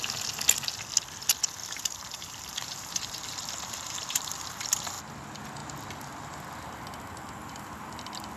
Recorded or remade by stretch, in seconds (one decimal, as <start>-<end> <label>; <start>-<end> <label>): 0.0-1.6 recorded; 1.6-5.0 remade; 5.0-8.4 recorded